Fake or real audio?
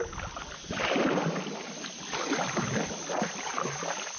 real